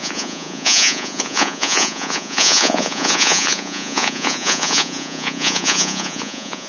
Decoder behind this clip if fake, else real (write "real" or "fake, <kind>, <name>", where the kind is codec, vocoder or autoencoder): fake, vocoder, Vocos